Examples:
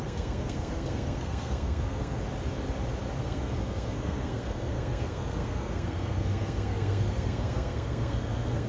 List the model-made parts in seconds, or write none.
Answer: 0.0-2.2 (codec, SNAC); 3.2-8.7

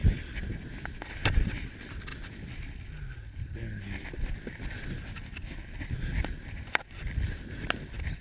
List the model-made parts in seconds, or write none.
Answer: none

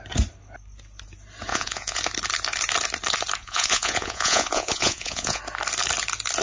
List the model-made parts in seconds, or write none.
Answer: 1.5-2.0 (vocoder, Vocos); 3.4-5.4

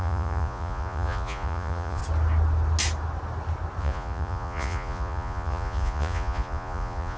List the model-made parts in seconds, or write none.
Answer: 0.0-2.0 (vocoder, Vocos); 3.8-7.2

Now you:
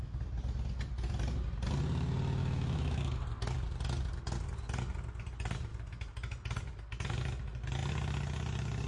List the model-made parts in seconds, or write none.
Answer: 2.4-3.2 (autoencoder, DAC-VAE)

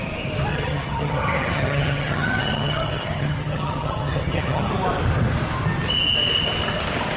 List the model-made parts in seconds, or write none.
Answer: 0.5-4.7 (vocoder, HiFi-GAN)